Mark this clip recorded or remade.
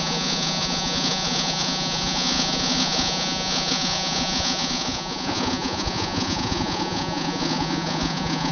remade